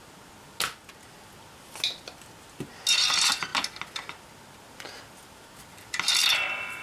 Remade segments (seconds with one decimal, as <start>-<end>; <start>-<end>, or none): none